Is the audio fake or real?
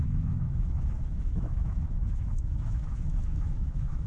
fake